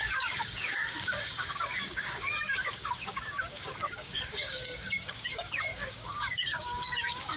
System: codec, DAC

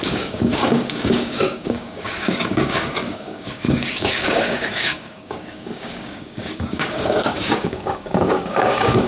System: codec, DAC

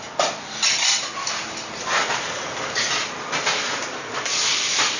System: none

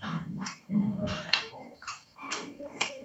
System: codec, DAC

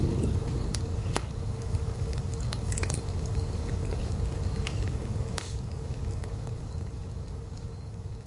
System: codec, DAC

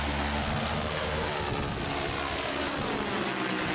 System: none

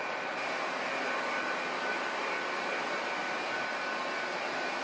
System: none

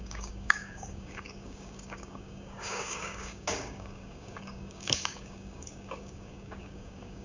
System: codec, DAC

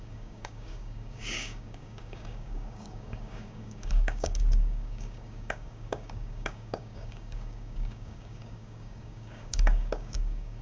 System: codec, DAC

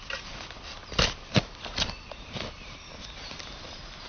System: none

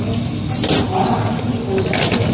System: none